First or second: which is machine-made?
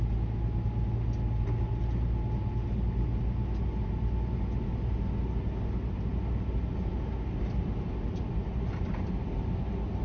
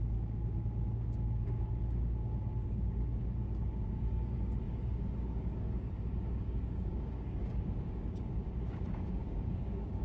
second